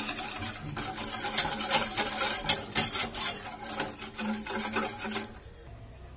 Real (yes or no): yes